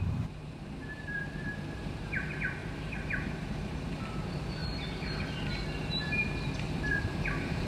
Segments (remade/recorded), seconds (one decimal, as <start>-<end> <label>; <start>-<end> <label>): 0.0-0.4 remade; 0.4-2.0 recorded; 2.0-4.6 remade; 4.6-7.0 recorded; 7.0-7.7 remade